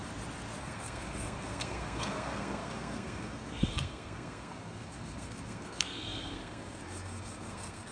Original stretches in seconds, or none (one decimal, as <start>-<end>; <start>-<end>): 0.0-0.6

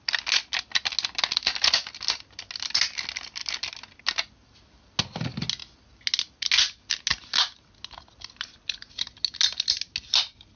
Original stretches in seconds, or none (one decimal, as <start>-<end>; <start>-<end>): 0.0-10.6

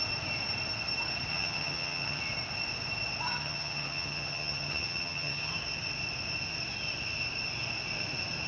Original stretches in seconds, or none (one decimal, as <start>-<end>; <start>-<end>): 0.0-1.3; 2.2-3.3; 5.5-8.5